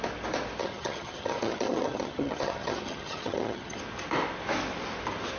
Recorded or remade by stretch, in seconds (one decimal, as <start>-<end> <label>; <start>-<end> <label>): 0.0-0.6 recorded; 0.6-3.8 remade; 3.8-5.4 recorded